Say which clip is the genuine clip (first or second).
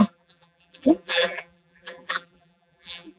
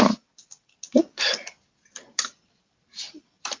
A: second